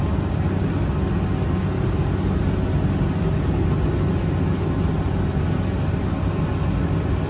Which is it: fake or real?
real